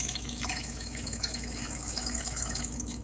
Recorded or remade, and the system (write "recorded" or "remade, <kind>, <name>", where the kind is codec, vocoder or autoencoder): remade, autoencoder, DAC-VAE